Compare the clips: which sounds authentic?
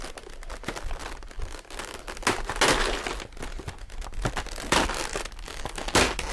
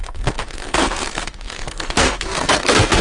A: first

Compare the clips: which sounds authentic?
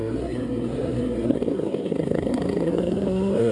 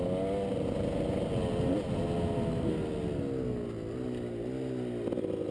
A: second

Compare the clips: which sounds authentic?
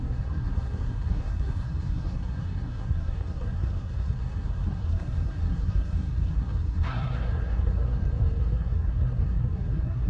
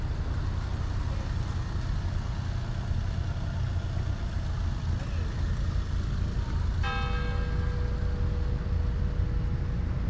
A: second